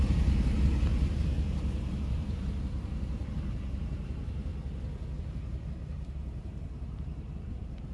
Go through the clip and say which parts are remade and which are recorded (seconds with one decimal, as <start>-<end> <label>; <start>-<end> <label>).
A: 0.0-4.5 remade; 4.5-5.2 recorded; 5.2-7.9 remade